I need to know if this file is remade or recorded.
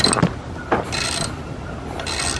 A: recorded